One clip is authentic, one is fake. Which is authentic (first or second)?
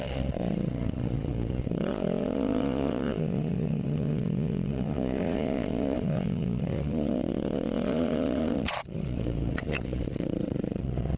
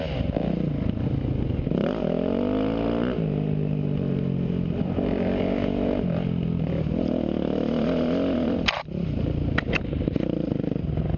second